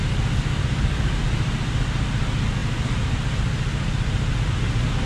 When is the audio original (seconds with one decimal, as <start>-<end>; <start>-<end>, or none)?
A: 0.0-5.1